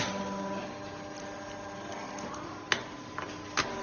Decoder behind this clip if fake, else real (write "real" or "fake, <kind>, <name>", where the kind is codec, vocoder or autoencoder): real